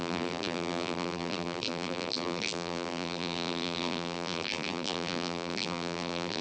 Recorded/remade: remade